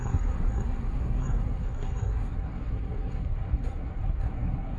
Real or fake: fake